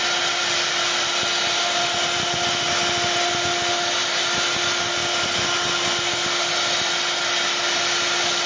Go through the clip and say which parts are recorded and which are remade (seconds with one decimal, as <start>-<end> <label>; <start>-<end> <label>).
0.0-8.5 recorded